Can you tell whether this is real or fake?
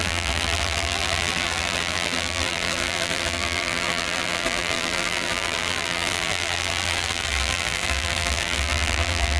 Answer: fake